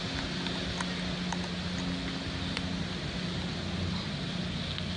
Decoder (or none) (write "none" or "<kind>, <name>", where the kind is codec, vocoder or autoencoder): none